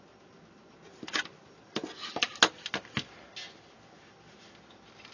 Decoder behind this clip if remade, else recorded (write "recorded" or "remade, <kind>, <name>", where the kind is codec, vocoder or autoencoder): recorded